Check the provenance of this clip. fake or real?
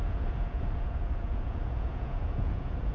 fake